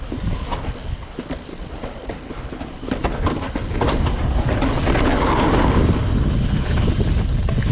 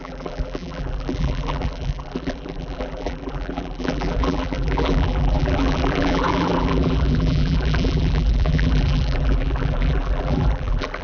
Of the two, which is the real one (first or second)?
first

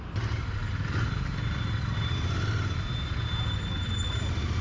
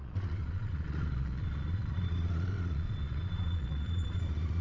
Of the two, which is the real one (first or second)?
first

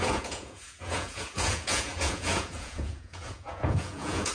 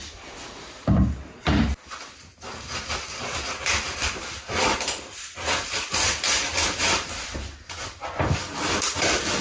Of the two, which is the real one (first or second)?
second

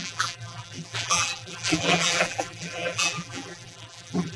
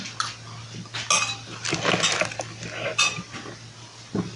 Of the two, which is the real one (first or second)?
second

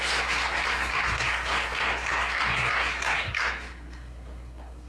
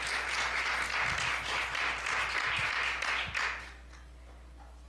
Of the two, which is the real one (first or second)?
second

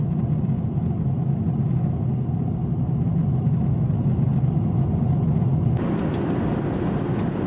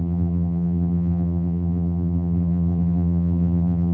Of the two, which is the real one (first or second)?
first